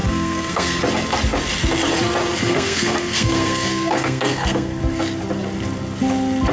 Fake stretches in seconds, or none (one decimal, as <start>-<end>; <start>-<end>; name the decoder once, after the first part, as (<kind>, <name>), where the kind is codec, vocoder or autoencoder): 0.0-0.8 (codec, SNAC); 2.4-4.8